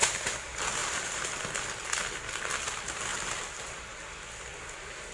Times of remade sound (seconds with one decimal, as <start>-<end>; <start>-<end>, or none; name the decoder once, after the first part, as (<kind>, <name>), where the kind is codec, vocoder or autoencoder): 0.8-1.4 (vocoder, BigVGAN v2); 3.1-4.2